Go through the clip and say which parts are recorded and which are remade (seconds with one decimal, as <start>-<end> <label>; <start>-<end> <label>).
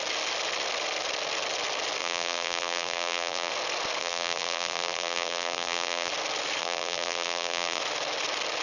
0.0-2.0 recorded; 2.0-3.5 remade; 3.5-4.0 recorded; 4.0-6.1 remade; 6.1-6.6 recorded; 6.6-7.8 remade; 7.8-8.6 recorded